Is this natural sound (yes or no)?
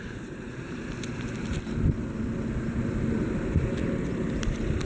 yes